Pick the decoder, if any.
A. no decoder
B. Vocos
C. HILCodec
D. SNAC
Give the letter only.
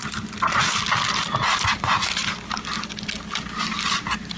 A